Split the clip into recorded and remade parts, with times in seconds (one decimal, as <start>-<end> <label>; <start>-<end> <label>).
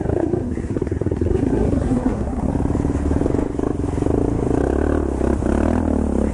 0.0-2.5 remade; 2.5-6.3 recorded